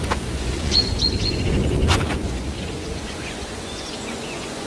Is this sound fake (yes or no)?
yes